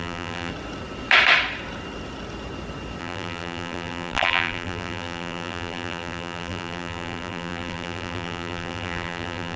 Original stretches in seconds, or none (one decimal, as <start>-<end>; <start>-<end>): 0.5-3.0